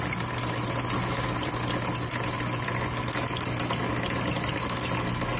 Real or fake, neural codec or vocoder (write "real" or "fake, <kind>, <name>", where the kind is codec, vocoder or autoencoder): real